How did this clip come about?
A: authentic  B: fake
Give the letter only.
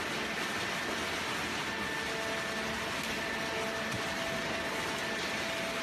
A